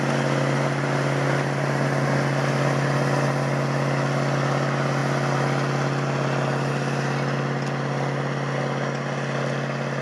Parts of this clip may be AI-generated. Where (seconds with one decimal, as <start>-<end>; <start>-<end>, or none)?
none